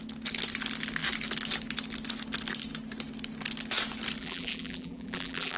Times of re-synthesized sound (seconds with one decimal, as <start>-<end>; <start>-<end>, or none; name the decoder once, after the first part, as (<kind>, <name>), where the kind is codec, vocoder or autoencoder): 4.2-5.6 (vocoder, BigVGAN v2)

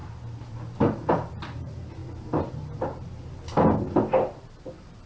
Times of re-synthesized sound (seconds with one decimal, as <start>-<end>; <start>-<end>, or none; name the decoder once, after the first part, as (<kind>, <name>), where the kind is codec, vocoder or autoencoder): none

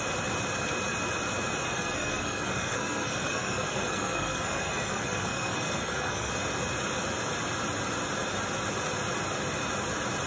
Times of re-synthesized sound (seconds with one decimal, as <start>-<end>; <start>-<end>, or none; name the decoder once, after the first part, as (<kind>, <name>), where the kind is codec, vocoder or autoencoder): 1.7-6.3 (codec, SNAC)